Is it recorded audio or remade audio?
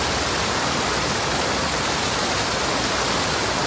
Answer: recorded